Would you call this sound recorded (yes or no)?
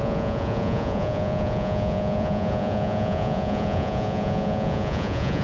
no